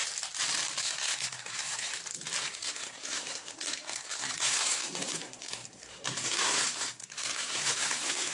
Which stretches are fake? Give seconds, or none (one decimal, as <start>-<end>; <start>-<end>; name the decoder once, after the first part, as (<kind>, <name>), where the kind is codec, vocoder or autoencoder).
0.8-1.9 (codec, SNAC); 2.4-8.3